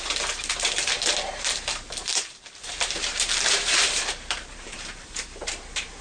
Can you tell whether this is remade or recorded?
remade